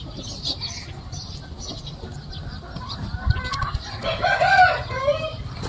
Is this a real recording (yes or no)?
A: yes